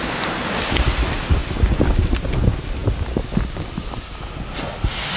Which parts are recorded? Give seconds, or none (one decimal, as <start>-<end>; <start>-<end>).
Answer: 0.0-5.2